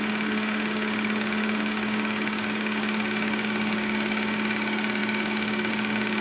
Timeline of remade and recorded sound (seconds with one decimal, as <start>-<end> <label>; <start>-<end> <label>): 0.0-6.2 remade

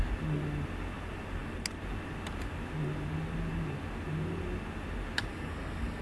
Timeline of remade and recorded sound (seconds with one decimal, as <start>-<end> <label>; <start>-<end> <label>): 0.0-5.3 recorded; 5.3-6.0 remade

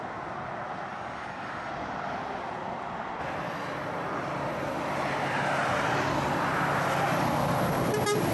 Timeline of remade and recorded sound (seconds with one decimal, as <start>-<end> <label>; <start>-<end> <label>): 0.0-0.9 recorded; 0.9-1.7 remade; 1.7-8.3 recorded

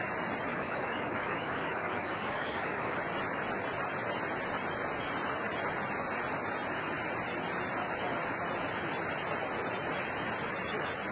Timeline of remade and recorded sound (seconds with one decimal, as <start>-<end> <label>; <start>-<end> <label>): 0.0-0.5 recorded; 0.5-3.0 remade; 3.0-11.1 recorded

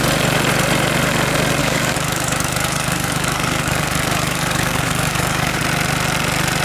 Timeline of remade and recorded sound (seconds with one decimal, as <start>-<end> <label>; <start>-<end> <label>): 0.0-1.6 recorded; 1.6-5.6 remade; 5.6-6.6 recorded

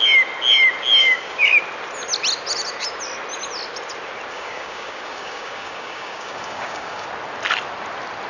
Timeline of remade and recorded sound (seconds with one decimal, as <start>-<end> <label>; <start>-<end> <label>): 0.0-1.0 recorded; 1.0-1.6 remade; 1.6-4.3 recorded; 4.3-7.1 remade; 7.1-8.3 recorded

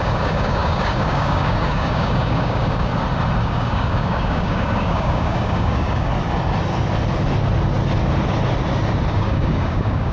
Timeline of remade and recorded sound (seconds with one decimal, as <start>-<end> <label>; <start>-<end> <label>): 0.0-2.9 remade; 2.9-3.4 recorded; 3.4-6.1 remade; 6.1-9.1 recorded; 9.1-10.1 remade